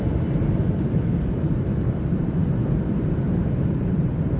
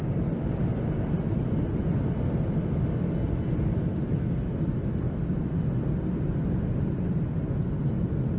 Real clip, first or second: second